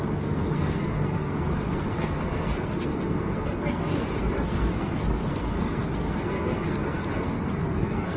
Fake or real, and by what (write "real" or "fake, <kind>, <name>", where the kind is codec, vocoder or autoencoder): fake, codec, SNAC